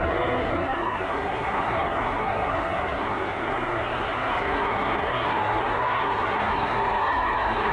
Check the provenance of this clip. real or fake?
fake